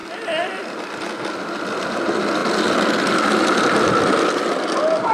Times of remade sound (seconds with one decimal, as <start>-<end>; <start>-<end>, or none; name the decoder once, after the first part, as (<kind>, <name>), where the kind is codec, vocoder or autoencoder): none